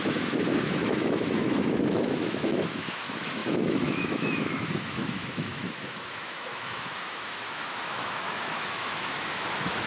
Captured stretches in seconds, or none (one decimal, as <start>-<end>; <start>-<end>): none